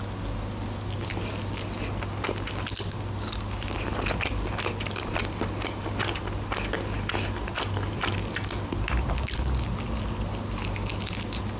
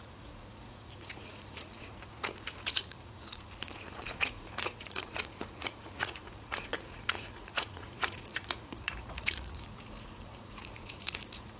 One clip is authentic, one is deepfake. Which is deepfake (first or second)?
second